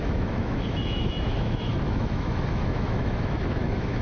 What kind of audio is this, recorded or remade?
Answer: remade